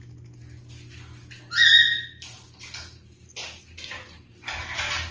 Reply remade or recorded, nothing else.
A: recorded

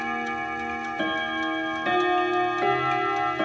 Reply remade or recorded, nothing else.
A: recorded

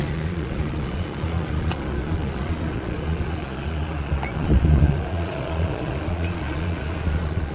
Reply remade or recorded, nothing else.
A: remade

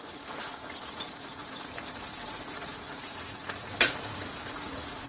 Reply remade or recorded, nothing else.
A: remade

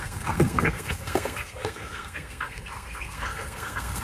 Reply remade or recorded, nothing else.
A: remade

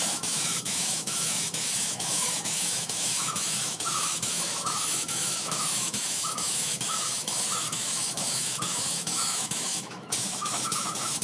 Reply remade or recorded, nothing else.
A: remade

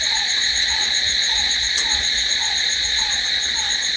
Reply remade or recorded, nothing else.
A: remade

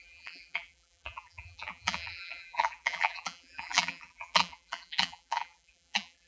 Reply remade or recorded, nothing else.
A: remade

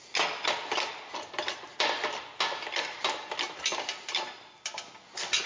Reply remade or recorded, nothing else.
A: recorded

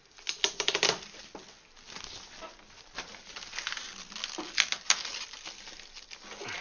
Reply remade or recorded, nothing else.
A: recorded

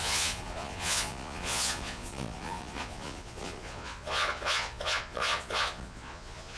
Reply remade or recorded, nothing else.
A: remade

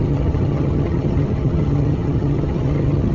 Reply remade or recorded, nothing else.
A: remade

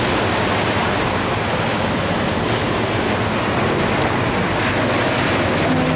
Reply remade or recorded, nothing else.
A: recorded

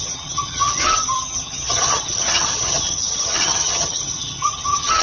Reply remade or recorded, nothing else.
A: remade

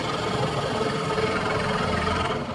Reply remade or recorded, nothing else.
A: remade